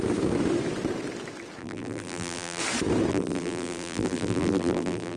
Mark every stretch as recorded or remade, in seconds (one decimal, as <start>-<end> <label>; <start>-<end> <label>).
0.0-1.6 recorded; 1.6-2.6 remade; 2.6-3.1 recorded; 3.1-5.2 remade